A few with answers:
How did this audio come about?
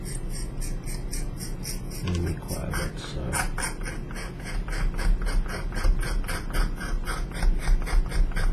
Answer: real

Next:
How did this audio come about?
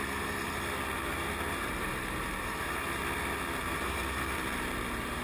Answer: fake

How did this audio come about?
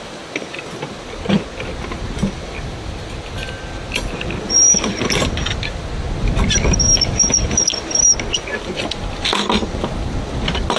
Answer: real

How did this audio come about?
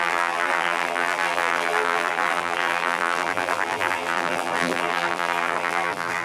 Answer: fake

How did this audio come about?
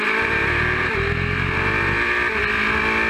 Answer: real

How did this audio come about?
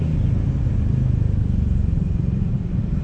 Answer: real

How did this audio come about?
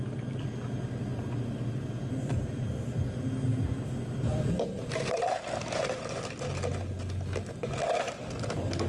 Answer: real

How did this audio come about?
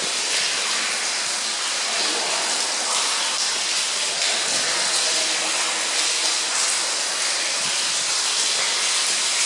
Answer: real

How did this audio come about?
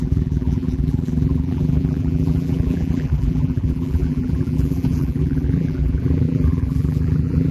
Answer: fake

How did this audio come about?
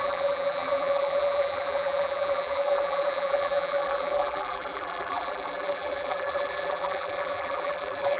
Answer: fake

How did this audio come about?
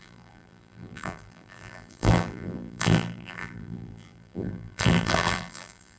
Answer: fake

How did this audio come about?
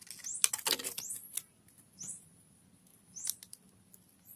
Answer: real